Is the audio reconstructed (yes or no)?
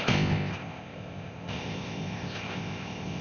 yes